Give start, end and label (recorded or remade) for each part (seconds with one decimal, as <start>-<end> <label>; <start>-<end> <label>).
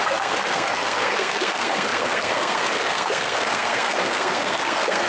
0.0-5.1 remade